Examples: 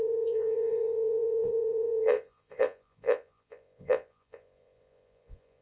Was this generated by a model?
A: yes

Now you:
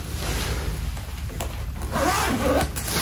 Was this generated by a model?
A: no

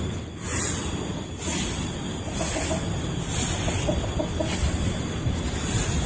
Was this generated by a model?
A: no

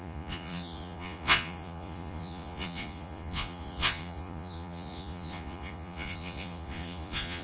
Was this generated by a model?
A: yes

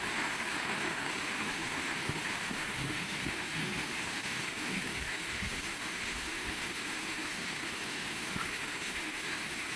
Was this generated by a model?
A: yes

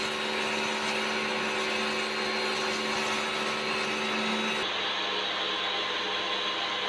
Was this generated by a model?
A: no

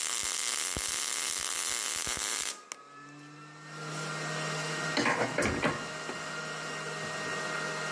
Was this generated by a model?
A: no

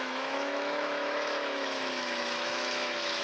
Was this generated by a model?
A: yes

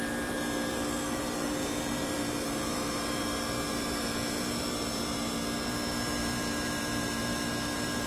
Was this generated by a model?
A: yes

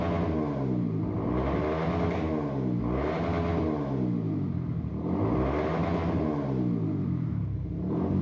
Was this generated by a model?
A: no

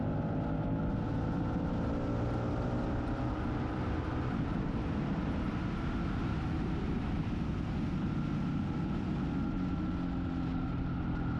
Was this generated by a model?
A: no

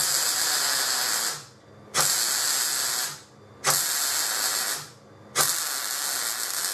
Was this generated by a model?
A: no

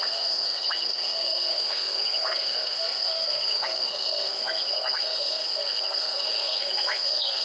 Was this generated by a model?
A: yes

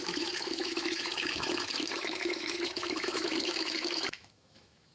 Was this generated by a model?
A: yes